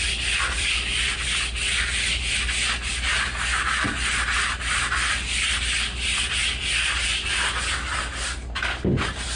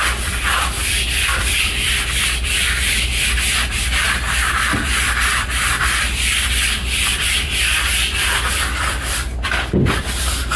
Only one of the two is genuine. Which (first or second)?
first